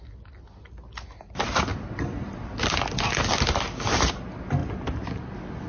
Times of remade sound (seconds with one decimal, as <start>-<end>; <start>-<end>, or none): none